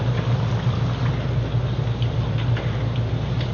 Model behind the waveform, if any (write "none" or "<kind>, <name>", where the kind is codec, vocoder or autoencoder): none